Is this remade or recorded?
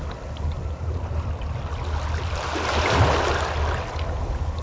recorded